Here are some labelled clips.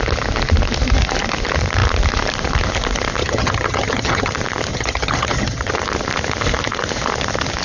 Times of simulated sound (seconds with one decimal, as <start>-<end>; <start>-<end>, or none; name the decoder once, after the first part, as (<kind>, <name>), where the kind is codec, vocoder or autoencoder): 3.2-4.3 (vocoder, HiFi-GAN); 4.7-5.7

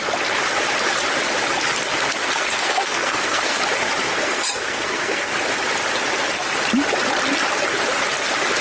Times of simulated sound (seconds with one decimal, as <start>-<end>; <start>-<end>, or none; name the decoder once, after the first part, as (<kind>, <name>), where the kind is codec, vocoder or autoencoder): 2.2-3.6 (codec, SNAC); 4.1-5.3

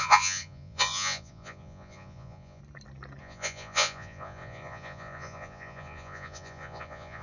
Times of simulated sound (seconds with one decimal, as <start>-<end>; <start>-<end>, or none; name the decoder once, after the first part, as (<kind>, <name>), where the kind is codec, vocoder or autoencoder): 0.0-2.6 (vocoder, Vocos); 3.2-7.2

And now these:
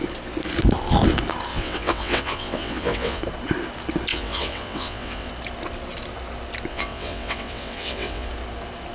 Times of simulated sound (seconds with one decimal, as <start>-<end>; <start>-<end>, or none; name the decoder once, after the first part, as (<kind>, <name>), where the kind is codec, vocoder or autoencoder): 1.5-3.2 (vocoder, WaveNeXt); 4.1-5.3; 6.7-8.3